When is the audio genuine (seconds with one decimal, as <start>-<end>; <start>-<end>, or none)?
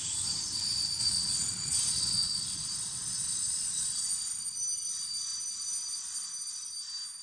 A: 0.0-1.0; 4.0-7.2